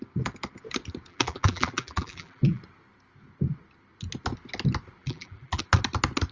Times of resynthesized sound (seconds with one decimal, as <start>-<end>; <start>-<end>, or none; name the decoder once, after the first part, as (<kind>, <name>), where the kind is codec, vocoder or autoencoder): 1.1-2.6 (vocoder, BigVGAN v2); 5.0-5.6